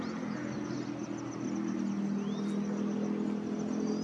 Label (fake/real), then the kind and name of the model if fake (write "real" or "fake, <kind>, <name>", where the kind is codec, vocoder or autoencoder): real